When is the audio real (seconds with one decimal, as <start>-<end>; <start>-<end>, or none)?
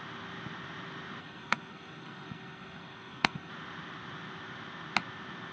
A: 0.0-1.2; 3.5-5.5